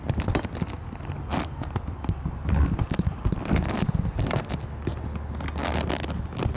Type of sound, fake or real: real